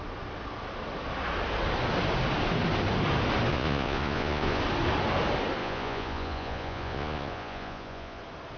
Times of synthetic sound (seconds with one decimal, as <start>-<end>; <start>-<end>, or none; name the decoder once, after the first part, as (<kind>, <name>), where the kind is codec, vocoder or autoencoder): 3.5-4.6 (vocoder, Vocos); 5.6-8.2